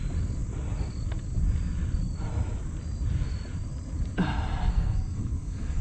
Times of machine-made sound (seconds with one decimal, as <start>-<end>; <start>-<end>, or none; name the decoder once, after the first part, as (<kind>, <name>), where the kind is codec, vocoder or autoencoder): 4.7-5.8 (codec, SNAC)